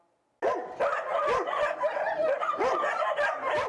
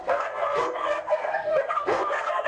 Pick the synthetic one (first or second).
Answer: second